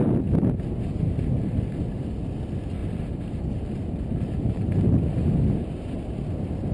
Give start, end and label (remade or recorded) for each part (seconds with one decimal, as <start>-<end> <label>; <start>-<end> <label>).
0.0-6.7 recorded